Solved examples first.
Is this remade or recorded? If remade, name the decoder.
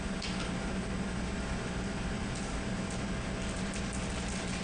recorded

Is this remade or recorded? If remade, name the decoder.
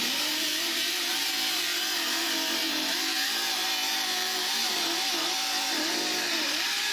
remade, vocoder, BigVGAN v2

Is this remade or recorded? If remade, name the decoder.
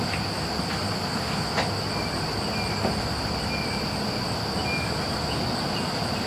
recorded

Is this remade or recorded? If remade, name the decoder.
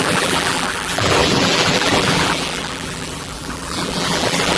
remade, vocoder, BigVGAN v2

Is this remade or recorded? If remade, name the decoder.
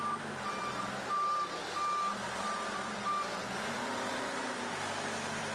remade, vocoder, BigVGAN v2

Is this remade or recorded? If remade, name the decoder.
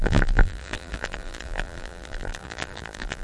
remade, vocoder, BigVGAN v2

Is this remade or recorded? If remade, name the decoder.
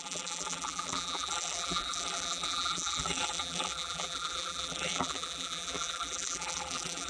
remade, vocoder, BigVGAN v2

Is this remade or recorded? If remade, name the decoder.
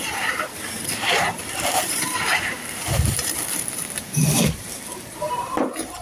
remade, vocoder, BigVGAN v2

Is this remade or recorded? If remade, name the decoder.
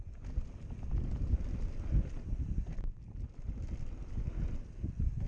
recorded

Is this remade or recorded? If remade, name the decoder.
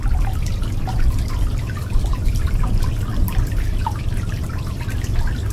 remade, vocoder, BigVGAN v2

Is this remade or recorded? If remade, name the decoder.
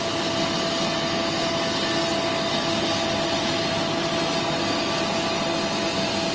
recorded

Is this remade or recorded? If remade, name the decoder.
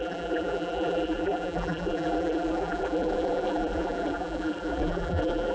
remade, vocoder, BigVGAN v2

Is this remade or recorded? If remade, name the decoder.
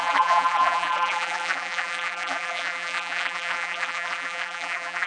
remade, vocoder, BigVGAN v2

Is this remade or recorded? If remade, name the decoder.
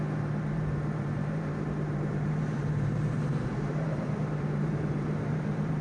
remade, vocoder, BigVGAN v2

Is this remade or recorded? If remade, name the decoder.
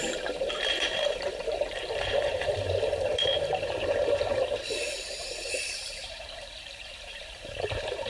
remade, vocoder, BigVGAN v2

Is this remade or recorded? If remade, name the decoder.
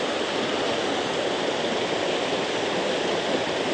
recorded